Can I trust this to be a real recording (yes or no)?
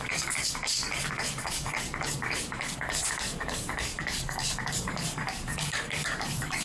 no